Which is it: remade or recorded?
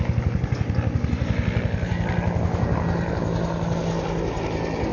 recorded